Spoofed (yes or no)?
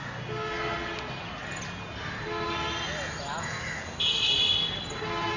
no